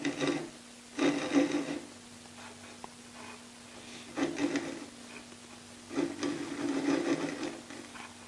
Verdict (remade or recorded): recorded